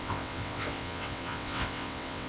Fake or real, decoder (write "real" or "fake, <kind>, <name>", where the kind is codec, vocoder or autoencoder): fake, vocoder, WaveNeXt